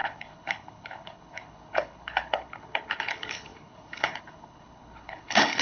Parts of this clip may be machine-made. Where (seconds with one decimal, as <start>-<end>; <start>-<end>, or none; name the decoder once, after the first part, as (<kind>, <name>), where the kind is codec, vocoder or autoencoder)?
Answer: 0.0-5.6 (codec, HILCodec)